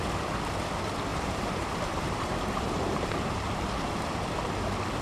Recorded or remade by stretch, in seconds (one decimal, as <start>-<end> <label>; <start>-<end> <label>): 0.0-1.1 recorded; 1.1-4.1 remade; 4.1-5.0 recorded